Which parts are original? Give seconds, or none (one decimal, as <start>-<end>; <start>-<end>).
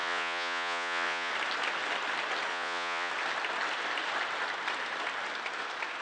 1.3-2.5; 3.1-6.0